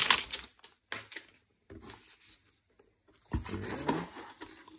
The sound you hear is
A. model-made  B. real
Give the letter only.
B